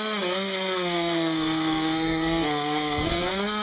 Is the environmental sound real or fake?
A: fake